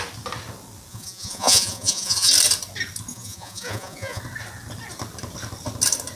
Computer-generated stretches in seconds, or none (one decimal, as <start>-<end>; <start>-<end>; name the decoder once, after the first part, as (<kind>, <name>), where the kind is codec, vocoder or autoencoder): 0.9-2.3 (vocoder, Vocos); 3.1-4.2